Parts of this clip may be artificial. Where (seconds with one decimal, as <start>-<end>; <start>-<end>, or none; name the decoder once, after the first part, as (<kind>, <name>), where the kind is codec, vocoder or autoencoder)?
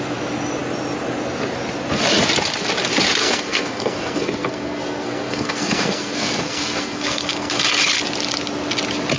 3.2-7.6 (codec, SNAC)